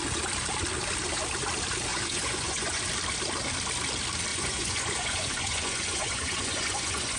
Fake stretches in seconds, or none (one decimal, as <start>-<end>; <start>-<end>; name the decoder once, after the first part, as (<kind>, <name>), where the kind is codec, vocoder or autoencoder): 1.9-2.8 (vocoder, Vocos); 4.3-7.2